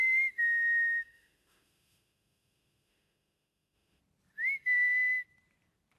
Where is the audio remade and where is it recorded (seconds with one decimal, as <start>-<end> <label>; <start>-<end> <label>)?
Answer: 0.0-0.4 recorded; 0.4-4.0 remade; 4.0-6.0 recorded